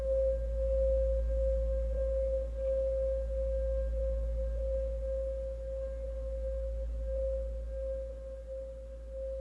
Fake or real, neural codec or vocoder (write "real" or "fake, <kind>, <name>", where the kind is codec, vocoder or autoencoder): real